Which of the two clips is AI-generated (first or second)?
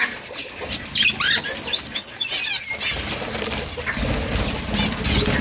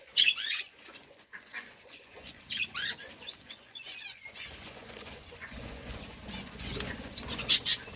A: second